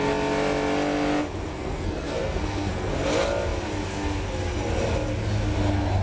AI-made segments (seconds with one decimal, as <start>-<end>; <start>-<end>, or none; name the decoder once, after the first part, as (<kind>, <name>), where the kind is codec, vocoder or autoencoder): 1.5-2.9 (codec, SNAC)